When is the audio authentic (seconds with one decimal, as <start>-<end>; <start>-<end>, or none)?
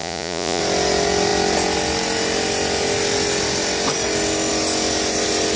0.6-5.6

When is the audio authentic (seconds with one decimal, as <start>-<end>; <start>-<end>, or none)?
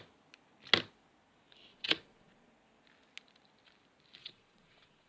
0.0-1.7; 2.5-4.2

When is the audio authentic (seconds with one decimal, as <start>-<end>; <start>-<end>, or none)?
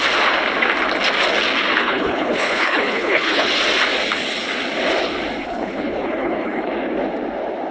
0.0-1.8; 3.5-5.4; 6.7-7.7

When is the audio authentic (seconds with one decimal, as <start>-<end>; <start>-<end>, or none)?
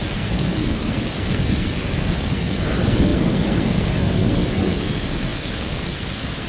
none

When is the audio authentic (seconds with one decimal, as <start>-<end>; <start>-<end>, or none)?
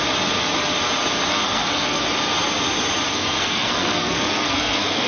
0.0-1.3; 2.0-3.1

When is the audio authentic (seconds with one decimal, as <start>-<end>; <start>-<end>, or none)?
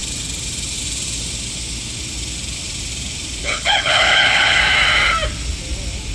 0.0-3.4; 4.6-6.1